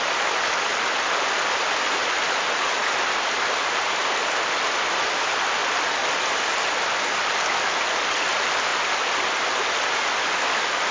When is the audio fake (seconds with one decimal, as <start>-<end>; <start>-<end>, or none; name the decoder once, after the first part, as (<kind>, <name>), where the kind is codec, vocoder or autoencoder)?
none